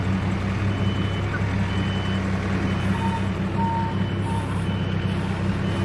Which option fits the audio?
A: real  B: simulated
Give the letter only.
A